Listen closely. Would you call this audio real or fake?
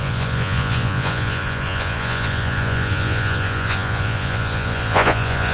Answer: fake